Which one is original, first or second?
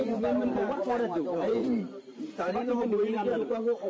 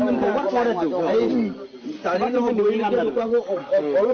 second